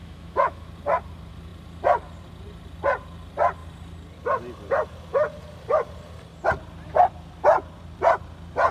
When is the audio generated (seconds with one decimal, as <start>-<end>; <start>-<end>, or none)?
0.0-0.7